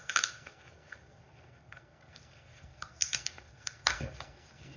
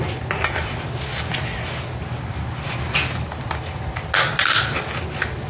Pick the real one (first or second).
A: second